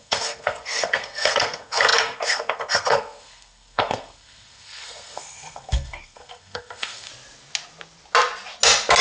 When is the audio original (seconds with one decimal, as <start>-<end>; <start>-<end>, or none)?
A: 7.1-9.0